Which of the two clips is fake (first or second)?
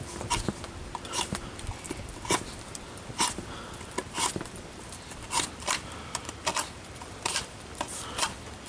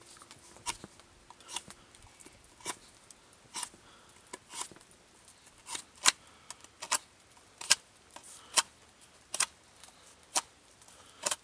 first